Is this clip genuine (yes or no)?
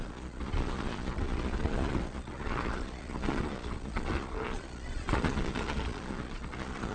no